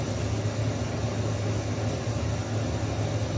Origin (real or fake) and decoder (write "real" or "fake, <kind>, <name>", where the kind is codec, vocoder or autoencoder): real